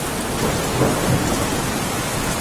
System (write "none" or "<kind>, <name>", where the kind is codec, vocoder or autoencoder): none